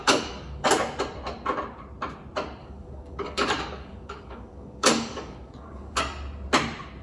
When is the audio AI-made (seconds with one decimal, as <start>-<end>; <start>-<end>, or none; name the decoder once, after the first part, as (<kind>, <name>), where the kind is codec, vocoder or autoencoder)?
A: 0.0-0.7 (codec, DAC); 2.6-6.0